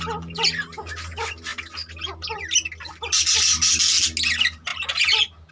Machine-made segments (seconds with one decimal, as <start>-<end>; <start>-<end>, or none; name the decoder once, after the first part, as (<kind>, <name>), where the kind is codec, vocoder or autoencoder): none